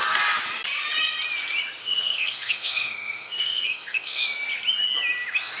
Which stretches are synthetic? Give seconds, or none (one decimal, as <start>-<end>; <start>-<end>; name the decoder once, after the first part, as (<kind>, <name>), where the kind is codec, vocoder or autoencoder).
1.8-4.2 (codec, SNAC)